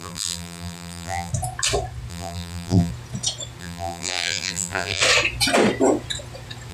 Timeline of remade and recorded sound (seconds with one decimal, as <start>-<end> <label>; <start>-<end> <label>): 0.0-1.3 remade; 1.3-2.1 recorded; 2.1-2.9 remade; 2.9-3.6 recorded; 3.6-5.0 remade; 5.0-6.7 recorded